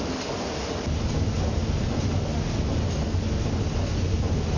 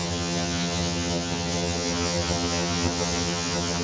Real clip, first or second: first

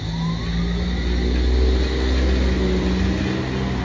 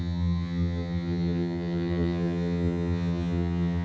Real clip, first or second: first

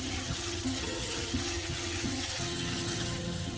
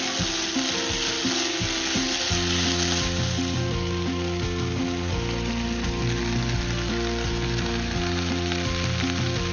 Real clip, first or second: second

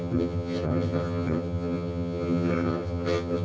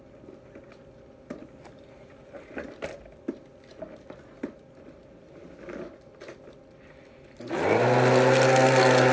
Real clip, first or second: second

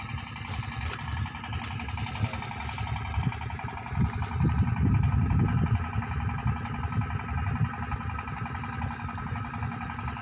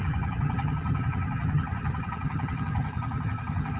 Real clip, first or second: first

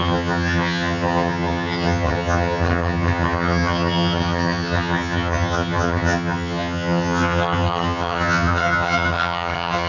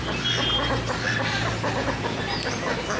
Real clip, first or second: second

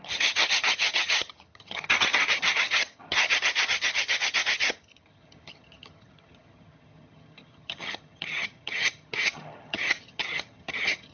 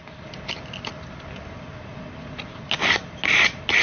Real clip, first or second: second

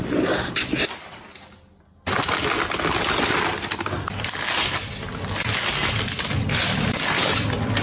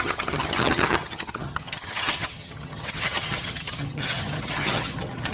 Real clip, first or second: first